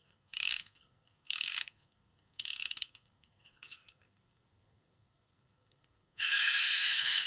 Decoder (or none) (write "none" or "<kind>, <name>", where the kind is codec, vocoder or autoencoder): codec, SNAC